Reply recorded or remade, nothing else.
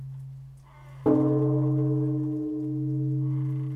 recorded